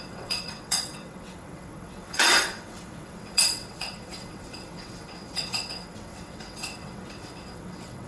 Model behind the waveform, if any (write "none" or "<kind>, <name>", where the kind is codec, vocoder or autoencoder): vocoder, WaveNeXt